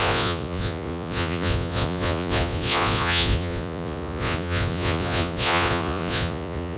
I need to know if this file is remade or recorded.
remade